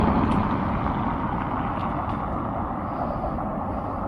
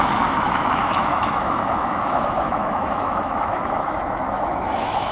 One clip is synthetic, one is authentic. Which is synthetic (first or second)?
second